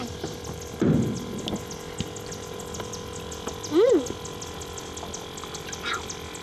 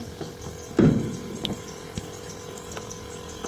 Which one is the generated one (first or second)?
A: second